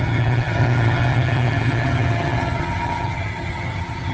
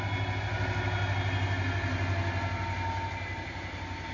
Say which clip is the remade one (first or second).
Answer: first